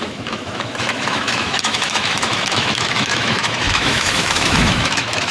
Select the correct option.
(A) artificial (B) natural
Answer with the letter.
A